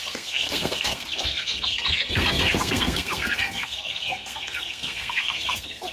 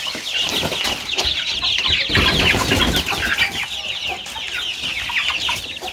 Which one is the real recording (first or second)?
second